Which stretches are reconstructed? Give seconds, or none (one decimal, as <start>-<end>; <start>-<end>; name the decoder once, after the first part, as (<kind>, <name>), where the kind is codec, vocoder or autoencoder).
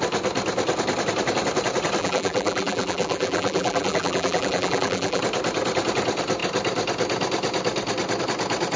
2.0-5.2 (vocoder, BigVGAN v2)